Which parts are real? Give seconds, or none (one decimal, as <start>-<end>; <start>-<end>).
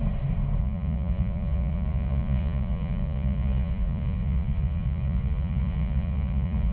0.0-0.6